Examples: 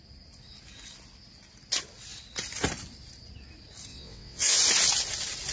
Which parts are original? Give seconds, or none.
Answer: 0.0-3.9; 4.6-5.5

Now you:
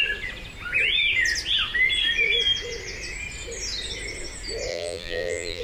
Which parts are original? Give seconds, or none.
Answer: 0.0-4.7

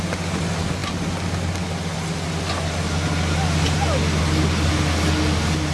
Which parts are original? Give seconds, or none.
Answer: 0.0-5.7

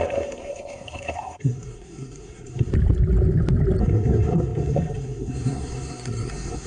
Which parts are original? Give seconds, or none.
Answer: 2.7-3.8

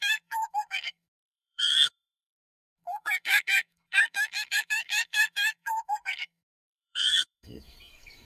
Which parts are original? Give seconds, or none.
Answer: none